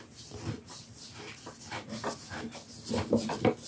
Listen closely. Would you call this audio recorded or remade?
recorded